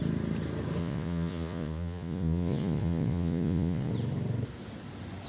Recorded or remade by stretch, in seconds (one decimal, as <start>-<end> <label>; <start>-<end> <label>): 0.0-0.8 recorded; 0.8-3.9 remade; 3.9-5.3 recorded